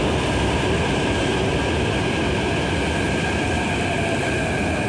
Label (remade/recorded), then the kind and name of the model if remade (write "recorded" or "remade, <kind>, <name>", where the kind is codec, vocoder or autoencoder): recorded